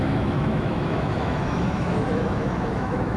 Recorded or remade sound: remade